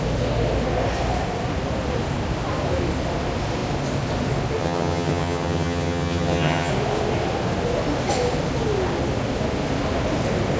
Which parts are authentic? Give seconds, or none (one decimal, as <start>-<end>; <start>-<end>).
0.0-4.6; 6.7-10.6